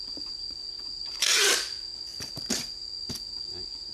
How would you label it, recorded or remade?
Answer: recorded